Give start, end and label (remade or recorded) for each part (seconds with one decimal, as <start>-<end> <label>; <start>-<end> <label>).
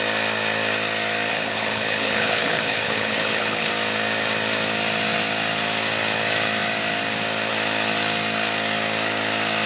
0.0-1.3 recorded; 1.3-3.7 remade; 3.7-9.7 recorded